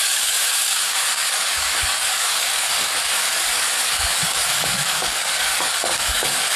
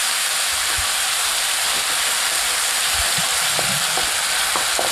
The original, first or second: second